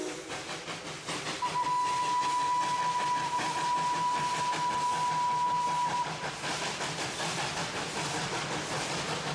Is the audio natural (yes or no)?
yes